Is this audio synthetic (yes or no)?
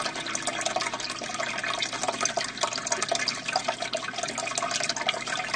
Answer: no